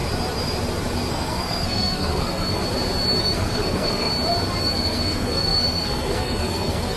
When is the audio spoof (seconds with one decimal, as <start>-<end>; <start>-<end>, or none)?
1.1-2.6; 3.2-4.1; 4.6-7.0